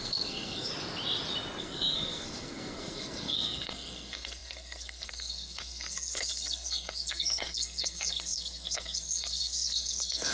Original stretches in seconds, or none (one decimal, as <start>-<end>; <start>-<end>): 0.7-1.6